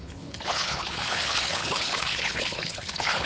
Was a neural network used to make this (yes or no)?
yes